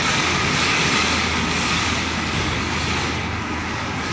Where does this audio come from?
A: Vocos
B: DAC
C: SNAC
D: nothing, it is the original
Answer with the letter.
B